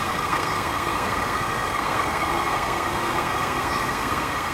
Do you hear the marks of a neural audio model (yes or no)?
yes